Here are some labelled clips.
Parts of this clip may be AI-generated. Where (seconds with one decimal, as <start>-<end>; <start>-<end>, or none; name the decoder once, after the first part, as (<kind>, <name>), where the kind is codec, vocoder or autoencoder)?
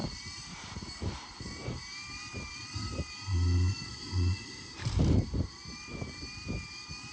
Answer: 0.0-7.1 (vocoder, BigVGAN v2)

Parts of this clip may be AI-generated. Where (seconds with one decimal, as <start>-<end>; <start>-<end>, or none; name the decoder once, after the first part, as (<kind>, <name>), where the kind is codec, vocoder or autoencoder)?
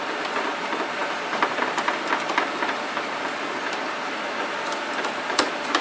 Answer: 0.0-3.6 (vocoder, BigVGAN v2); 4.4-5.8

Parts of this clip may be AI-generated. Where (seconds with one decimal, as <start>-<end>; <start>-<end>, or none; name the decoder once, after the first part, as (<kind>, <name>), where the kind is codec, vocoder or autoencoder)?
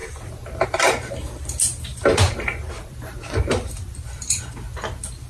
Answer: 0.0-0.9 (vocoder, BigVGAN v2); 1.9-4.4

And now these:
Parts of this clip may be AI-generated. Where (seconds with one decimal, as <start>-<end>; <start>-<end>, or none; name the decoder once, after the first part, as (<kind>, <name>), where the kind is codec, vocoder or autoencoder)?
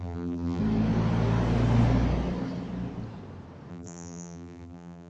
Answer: 0.0-0.6 (vocoder, BigVGAN v2); 3.7-5.1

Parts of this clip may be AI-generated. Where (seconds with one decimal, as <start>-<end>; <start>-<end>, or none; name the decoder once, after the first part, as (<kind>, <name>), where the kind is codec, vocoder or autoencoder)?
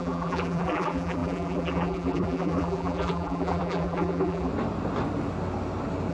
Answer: 0.0-4.5 (vocoder, BigVGAN v2)